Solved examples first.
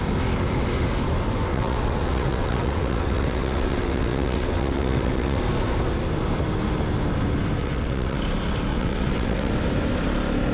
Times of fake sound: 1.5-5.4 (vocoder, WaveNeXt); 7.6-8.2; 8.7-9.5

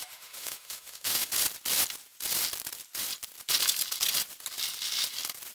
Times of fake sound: 0.0-1.3 (autoencoder, DAC-VAE)

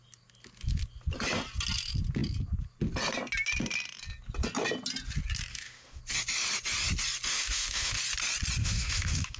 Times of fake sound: 5.5-6.0 (autoencoder, DAC-VAE); 7.3-8.0; 8.6-9.4

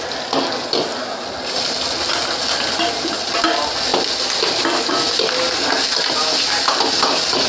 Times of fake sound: none

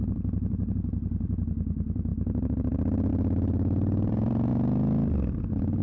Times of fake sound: 0.0-2.1 (vocoder, BigVGAN v2); 3.1-4.5